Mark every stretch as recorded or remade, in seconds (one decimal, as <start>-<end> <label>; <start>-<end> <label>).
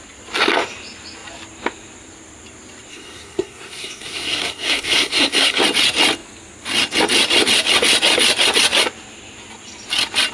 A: 0.0-2.9 recorded; 2.9-5.6 remade; 5.6-10.3 recorded